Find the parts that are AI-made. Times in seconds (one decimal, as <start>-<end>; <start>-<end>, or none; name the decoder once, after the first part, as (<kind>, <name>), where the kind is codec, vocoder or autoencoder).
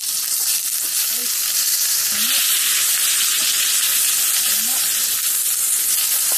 none